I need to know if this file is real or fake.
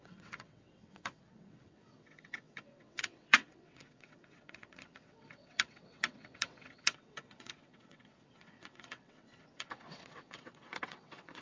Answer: fake